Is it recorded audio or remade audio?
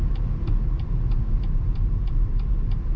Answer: recorded